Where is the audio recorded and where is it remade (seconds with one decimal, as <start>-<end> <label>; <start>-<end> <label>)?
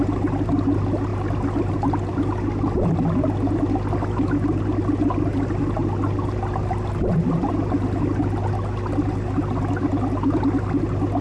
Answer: 0.0-11.2 recorded